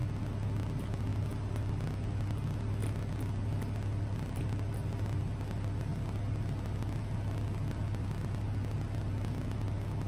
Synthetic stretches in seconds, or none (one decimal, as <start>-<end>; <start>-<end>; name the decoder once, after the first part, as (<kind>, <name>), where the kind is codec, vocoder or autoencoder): none